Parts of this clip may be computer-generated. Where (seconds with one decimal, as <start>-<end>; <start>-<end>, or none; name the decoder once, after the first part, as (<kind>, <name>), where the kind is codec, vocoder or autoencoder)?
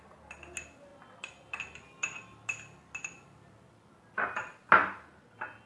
none